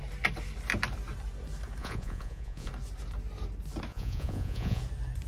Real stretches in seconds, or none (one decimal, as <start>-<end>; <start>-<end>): 0.0-1.8; 2.7-3.9; 4.8-5.3